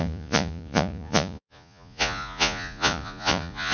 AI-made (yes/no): yes